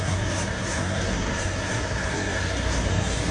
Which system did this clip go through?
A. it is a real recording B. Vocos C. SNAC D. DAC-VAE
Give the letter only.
C